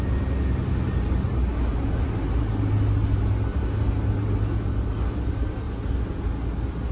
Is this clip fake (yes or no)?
no